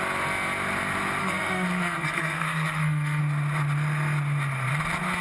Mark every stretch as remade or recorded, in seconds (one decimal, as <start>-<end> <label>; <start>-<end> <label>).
0.0-1.2 recorded; 1.2-3.2 remade; 3.2-5.2 recorded